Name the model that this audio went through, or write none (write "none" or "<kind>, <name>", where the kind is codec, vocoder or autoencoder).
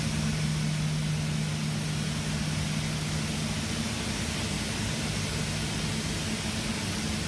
none